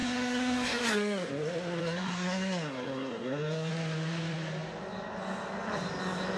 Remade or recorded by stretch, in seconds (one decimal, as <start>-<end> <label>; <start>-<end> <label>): 0.0-1.3 remade; 1.3-1.8 recorded; 1.8-3.7 remade; 3.7-6.4 recorded